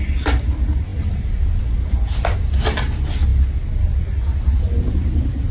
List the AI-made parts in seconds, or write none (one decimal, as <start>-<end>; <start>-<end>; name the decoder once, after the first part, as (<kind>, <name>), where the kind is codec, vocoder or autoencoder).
none